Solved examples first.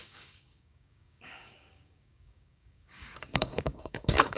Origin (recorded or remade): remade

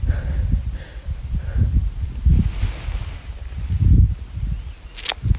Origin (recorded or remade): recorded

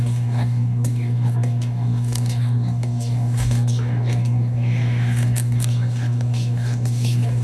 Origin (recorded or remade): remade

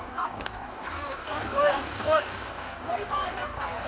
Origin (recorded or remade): remade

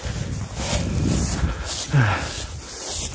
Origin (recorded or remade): recorded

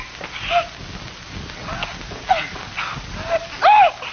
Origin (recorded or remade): recorded